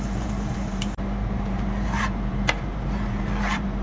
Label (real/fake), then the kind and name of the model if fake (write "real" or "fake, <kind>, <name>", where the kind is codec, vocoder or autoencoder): fake, vocoder, BigVGAN v2